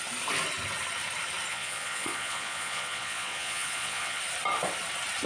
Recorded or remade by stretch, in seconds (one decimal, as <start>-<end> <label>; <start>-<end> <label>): 0.0-1.5 recorded; 1.5-4.2 remade; 4.2-5.3 recorded